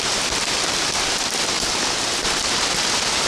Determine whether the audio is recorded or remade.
recorded